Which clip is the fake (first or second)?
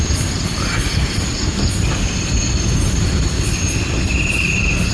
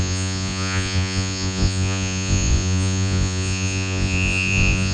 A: second